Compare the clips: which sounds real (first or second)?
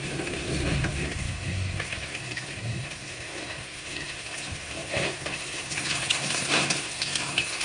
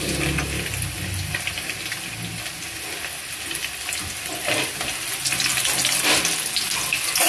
second